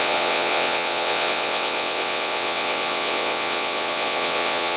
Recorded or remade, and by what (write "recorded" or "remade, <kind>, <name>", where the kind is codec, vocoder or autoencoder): remade, vocoder, WaveNeXt